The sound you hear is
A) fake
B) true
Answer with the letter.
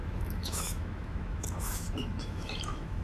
A